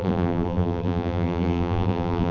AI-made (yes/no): yes